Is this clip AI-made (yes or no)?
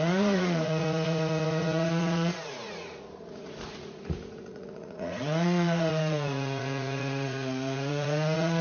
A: yes